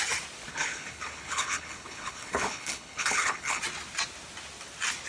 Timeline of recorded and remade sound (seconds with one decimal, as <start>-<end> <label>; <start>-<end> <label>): 0.0-0.5 recorded; 0.5-3.6 remade; 3.6-5.1 recorded